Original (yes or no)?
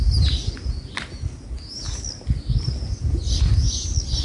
yes